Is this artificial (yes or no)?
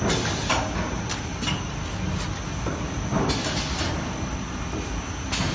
no